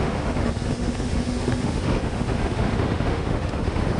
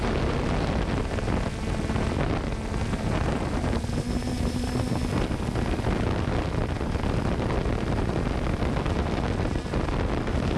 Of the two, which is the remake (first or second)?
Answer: first